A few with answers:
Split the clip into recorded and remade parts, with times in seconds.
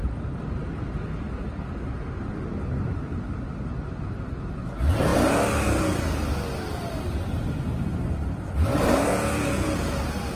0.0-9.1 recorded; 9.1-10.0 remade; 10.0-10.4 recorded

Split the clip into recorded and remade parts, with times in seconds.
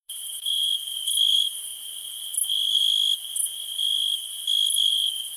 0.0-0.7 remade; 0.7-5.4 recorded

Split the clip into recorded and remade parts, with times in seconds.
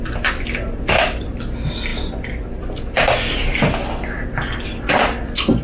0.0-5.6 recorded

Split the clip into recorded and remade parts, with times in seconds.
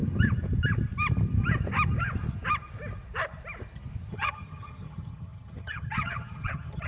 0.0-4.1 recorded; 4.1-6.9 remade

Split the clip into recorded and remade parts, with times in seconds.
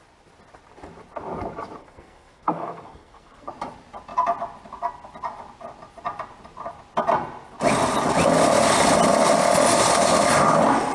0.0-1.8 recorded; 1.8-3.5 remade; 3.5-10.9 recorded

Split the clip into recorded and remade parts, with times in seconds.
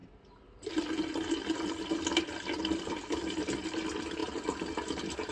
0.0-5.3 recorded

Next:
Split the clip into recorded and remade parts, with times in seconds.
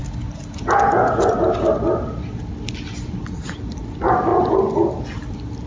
0.0-5.7 recorded